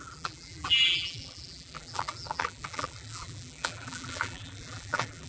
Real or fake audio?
fake